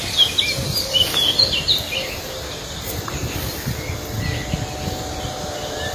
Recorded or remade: recorded